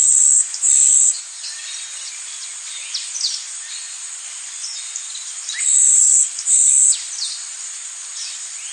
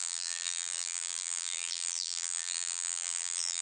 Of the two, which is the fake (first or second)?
second